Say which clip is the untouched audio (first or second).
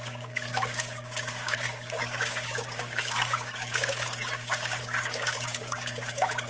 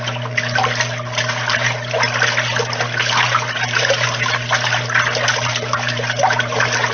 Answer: second